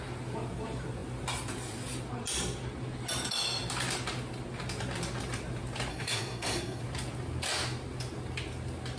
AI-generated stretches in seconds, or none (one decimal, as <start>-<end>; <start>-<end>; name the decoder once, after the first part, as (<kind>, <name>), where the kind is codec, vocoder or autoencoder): 5.9-6.8 (codec, SNAC)